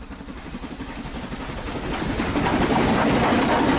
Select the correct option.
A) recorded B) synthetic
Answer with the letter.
A